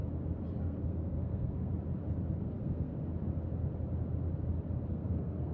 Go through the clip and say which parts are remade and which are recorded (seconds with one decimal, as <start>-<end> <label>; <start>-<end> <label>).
0.0-0.6 recorded; 0.6-1.7 remade; 1.7-2.4 recorded; 2.4-2.9 remade; 2.9-4.9 recorded; 4.9-5.5 remade